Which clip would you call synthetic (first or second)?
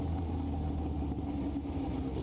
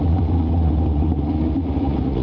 second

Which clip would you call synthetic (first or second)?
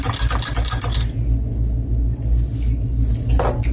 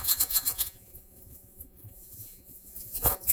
second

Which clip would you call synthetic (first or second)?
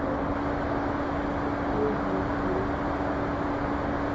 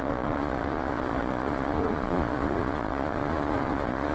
second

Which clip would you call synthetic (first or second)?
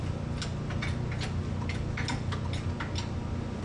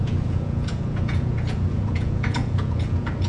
second